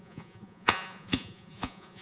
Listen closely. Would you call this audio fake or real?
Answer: fake